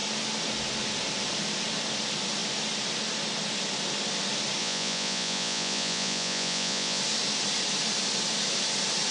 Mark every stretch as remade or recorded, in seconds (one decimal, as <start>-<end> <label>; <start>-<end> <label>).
0.0-4.6 recorded; 4.6-7.0 remade; 7.0-9.1 recorded